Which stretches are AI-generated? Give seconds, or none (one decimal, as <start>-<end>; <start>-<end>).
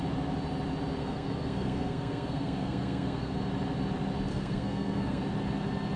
1.0-3.3; 4.3-5.2